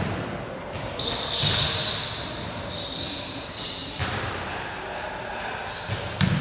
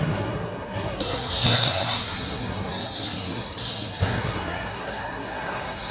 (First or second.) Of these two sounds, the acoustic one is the first